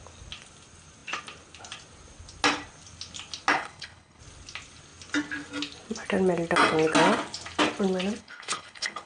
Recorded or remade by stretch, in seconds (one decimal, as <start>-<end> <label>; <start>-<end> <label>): 0.0-3.5 recorded; 3.5-4.2 remade; 4.2-8.2 recorded; 8.2-9.1 remade